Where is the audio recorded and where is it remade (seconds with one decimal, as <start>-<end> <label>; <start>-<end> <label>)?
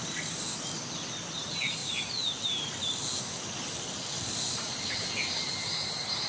0.0-6.3 recorded